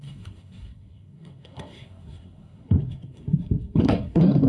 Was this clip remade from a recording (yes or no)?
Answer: yes